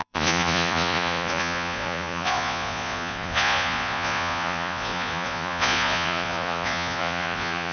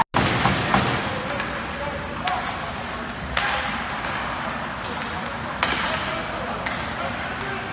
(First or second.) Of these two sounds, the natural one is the second